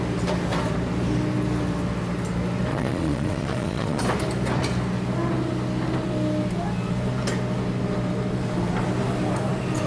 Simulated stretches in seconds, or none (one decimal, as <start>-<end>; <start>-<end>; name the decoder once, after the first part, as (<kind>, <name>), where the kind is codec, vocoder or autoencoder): 2.7-4.0 (vocoder, Vocos)